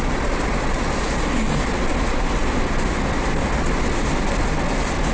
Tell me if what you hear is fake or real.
real